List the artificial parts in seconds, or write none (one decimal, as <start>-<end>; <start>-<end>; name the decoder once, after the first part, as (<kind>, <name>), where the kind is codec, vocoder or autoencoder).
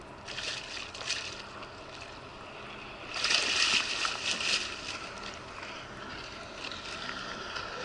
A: none